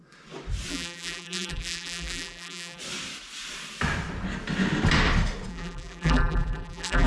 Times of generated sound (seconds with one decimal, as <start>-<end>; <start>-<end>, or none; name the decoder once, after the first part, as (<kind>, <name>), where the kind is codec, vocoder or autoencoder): 0.7-2.8 (vocoder, BigVGAN v2); 5.5-7.1